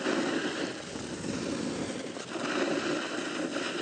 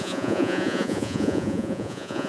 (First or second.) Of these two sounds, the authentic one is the first